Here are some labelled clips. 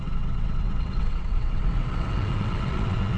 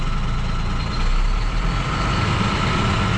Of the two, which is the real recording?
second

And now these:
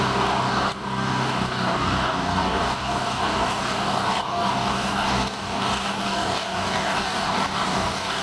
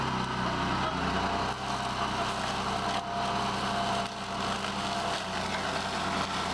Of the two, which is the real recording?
second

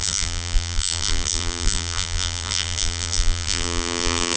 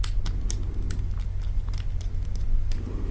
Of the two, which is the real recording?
second